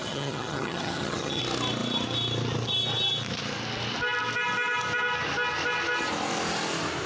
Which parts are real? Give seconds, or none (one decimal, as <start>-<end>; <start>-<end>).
1.4-7.1